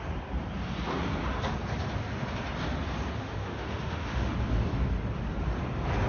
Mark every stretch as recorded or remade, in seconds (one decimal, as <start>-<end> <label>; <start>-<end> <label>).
0.0-3.2 recorded; 3.2-4.3 remade; 4.3-6.1 recorded

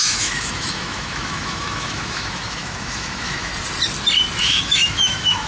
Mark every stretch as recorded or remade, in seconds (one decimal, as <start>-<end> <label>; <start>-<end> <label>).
0.0-3.5 remade; 3.5-4.4 recorded; 4.4-5.5 remade